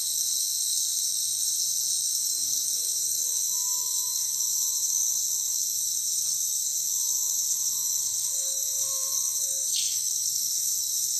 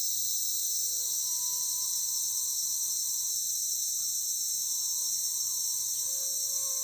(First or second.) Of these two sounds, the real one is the second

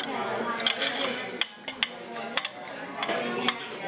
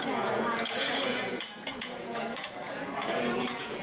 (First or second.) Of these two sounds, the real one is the first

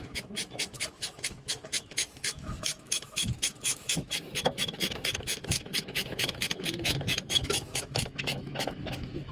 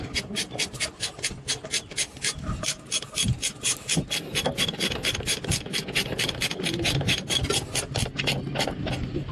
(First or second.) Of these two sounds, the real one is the second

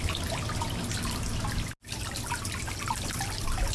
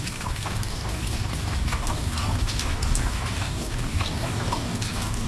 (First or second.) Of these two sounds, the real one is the first